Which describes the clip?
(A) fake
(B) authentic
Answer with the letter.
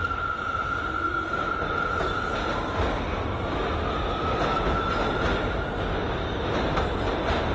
B